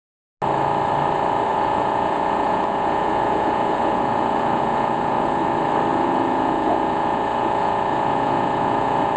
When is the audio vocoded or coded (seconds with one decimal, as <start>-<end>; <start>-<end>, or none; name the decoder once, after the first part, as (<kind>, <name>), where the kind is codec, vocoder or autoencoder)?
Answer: 1.5-5.4 (vocoder, Vocos); 5.9-9.2